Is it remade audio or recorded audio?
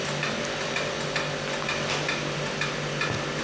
recorded